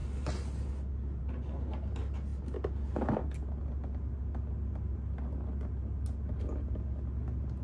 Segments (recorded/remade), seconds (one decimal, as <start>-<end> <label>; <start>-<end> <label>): 0.0-7.6 recorded